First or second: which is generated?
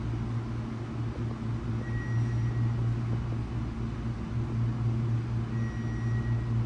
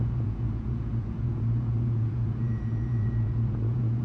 second